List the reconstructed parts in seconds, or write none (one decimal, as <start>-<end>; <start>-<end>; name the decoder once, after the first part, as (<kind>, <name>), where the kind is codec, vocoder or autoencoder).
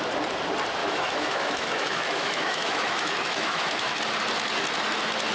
0.8-4.0 (autoencoder, DAC-VAE)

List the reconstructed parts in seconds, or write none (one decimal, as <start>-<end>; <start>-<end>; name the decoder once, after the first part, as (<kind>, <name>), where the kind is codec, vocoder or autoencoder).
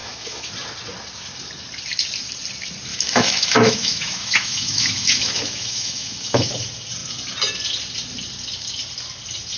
0.0-0.5 (autoencoder, DAC-VAE); 2.9-6.5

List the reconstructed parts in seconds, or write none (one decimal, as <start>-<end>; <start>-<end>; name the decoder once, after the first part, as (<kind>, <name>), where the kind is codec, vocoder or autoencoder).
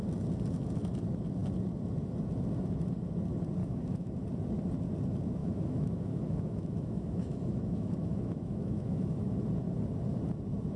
3.6-4.1 (autoencoder, DAC-VAE); 5.4-9.4